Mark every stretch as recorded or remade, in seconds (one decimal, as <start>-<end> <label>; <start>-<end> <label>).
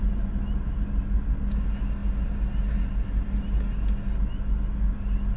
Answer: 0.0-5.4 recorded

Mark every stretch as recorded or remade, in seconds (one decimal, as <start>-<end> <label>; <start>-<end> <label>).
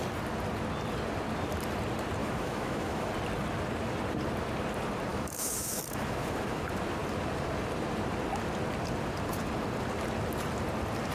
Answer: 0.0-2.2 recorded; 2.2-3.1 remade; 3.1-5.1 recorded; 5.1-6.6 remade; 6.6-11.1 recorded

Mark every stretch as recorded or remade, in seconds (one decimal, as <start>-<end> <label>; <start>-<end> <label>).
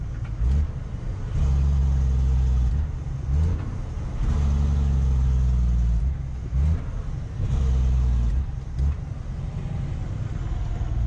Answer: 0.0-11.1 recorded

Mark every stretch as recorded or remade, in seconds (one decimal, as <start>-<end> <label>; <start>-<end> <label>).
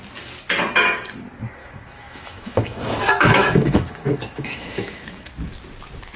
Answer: 0.0-1.6 recorded; 1.6-5.3 remade; 5.3-6.2 recorded